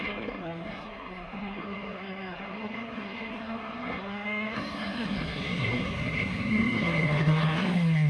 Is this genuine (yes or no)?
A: no